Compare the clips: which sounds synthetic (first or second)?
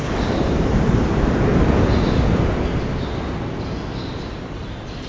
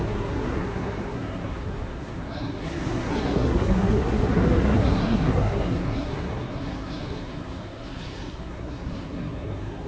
second